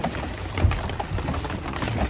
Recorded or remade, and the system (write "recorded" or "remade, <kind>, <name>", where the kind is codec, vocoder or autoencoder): recorded